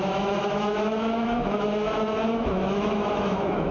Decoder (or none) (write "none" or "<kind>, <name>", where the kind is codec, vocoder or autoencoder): autoencoder, DAC-VAE